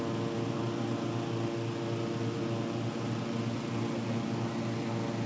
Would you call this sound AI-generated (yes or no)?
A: no